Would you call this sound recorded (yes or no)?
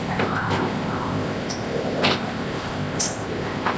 no